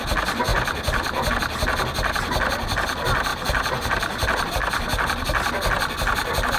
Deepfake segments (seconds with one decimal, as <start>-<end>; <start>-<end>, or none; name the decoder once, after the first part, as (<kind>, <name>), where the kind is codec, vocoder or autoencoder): 0.5-1.3 (vocoder, BigVGAN v2); 3.3-4.5